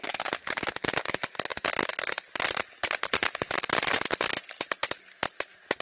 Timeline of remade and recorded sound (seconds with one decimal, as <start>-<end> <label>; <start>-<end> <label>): 0.0-5.8 recorded